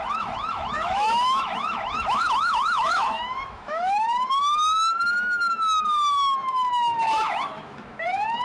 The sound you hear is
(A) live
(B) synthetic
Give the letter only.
B